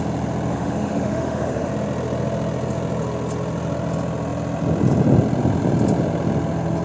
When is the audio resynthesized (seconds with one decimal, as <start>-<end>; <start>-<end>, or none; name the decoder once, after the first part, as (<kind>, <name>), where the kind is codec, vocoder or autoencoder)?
0.5-1.7 (autoencoder, DAC-VAE)